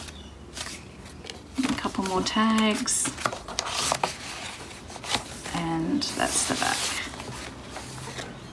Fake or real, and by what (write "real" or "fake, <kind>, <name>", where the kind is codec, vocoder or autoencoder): real